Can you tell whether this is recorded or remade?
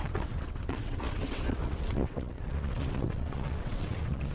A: remade